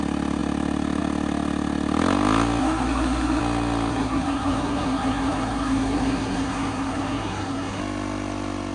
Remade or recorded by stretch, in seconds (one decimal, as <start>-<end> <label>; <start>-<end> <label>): 0.0-2.6 recorded; 2.6-3.4 remade; 3.4-3.9 recorded; 3.9-7.8 remade; 7.8-8.7 recorded